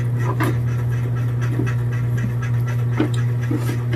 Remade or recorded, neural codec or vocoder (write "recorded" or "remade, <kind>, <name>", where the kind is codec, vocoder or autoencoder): recorded